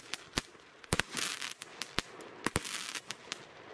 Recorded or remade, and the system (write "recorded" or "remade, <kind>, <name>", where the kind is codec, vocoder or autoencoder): recorded